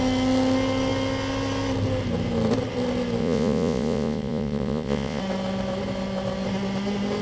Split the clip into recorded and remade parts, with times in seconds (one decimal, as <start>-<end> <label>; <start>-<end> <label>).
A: 0.0-3.2 recorded; 3.2-5.2 remade; 5.2-7.2 recorded